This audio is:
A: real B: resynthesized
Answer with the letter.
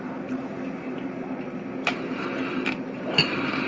A